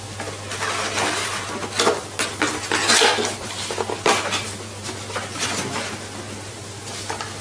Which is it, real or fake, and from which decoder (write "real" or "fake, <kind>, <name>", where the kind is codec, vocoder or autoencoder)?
real